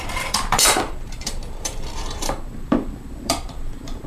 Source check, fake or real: fake